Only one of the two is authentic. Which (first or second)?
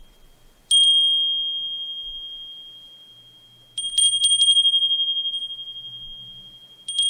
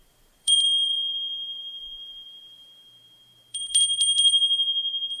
first